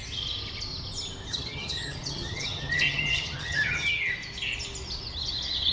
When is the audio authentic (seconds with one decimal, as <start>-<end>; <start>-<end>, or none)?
0.0-1.3; 4.1-5.7